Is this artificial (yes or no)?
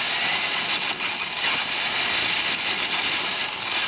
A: no